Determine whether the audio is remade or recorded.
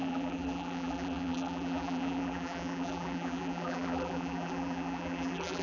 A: remade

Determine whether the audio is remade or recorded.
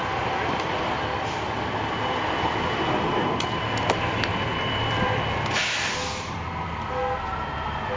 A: recorded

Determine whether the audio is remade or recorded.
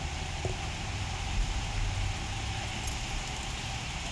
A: recorded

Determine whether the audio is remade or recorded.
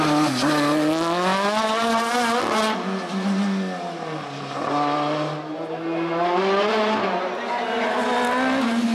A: recorded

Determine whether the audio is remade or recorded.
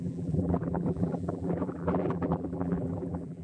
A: remade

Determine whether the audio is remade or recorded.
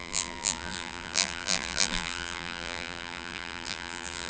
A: remade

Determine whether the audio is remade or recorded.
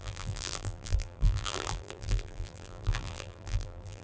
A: remade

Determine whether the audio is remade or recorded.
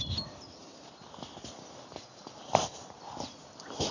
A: remade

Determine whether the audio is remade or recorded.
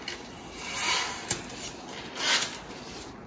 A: recorded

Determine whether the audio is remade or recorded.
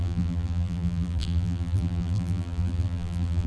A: remade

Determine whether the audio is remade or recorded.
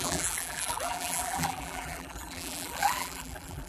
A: remade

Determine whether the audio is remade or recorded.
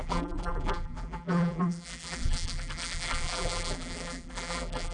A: remade